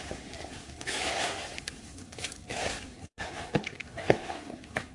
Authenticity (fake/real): fake